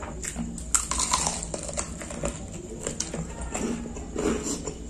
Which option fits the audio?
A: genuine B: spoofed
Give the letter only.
A